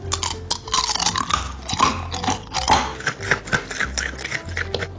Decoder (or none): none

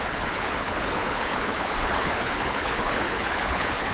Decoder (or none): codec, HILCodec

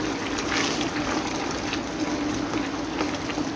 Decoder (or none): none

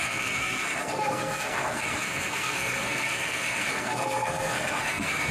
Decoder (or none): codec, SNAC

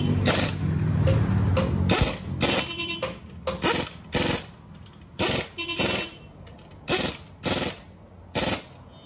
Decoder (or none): none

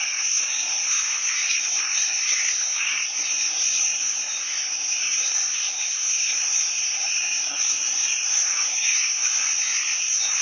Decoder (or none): codec, SNAC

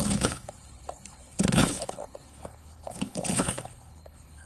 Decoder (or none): codec, HILCodec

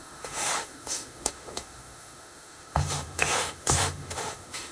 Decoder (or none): autoencoder, DAC-VAE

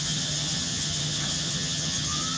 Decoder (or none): vocoder, HiFi-GAN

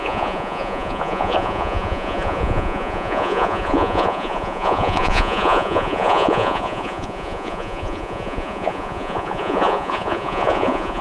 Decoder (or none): vocoder, Vocos